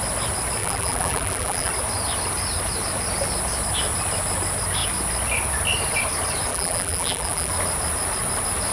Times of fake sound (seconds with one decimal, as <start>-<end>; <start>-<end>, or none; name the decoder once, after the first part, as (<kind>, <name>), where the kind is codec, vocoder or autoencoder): 0.6-1.7 (vocoder, BigVGAN v2); 6.5-7.5